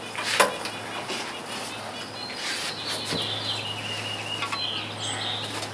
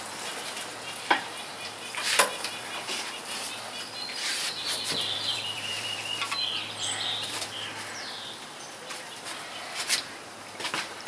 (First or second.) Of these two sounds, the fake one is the second